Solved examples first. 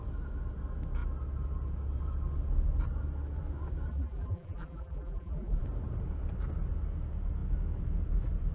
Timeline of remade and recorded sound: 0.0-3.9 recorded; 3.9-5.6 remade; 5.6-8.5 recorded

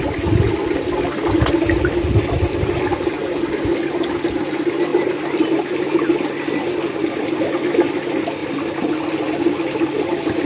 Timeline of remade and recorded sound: 0.0-8.4 recorded; 8.4-10.4 remade

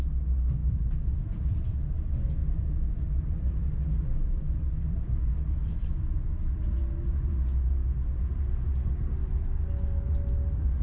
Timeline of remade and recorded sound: 0.0-0.6 recorded; 0.6-1.3 remade; 1.3-2.4 recorded; 2.4-6.7 remade; 6.7-10.8 recorded

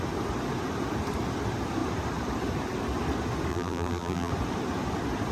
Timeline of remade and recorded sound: 0.0-3.5 recorded; 3.5-4.3 remade; 4.3-5.3 recorded

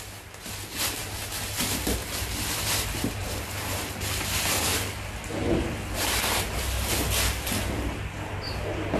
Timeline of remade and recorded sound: 0.0-9.0 recorded

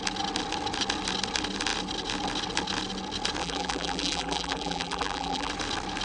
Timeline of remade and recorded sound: 0.0-3.4 recorded; 3.4-5.5 remade; 5.5-6.0 recorded

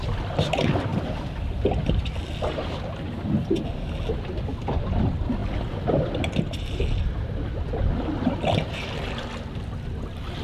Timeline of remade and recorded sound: 0.0-10.4 recorded